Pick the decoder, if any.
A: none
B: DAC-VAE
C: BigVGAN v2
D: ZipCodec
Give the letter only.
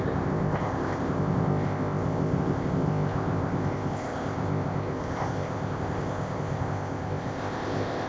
D